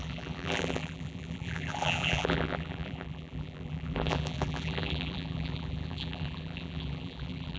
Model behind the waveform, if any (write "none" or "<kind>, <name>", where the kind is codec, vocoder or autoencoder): vocoder, BigVGAN v2